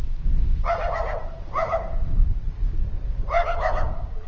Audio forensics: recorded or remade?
recorded